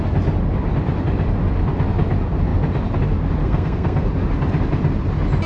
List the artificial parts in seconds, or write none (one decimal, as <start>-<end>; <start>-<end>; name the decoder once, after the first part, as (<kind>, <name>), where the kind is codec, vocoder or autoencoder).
3.4-4.1 (codec, SNAC)